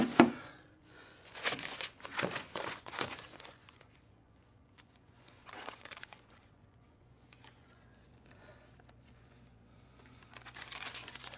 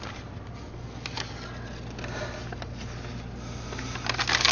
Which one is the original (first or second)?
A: second